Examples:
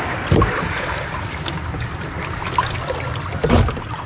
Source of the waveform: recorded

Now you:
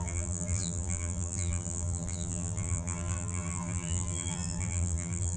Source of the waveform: remade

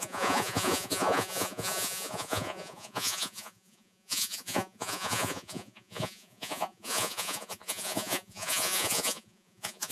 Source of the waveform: remade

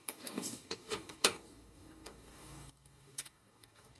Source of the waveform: remade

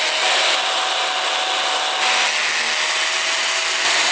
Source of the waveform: recorded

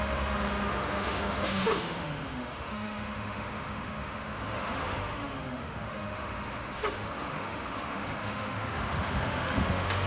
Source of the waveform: remade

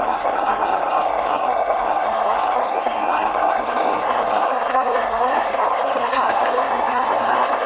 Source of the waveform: remade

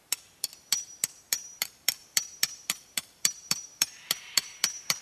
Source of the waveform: remade